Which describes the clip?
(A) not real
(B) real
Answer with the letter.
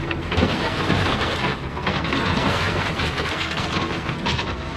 A